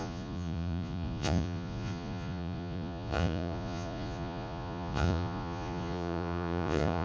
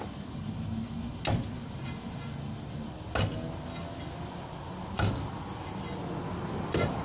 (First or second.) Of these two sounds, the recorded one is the second